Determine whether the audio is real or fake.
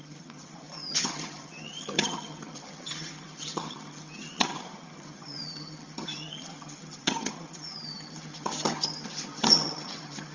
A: fake